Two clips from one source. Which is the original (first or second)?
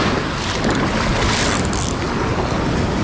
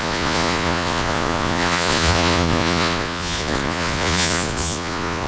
first